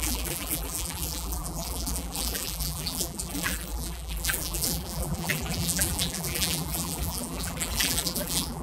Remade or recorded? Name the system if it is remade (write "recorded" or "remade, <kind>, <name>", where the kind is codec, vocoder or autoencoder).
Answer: remade, vocoder, BigVGAN v2